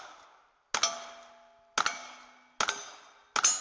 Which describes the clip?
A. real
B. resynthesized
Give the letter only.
A